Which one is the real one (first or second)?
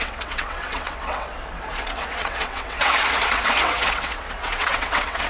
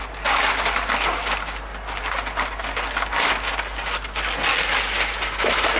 second